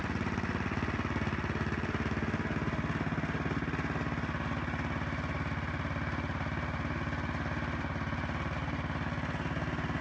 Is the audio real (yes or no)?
yes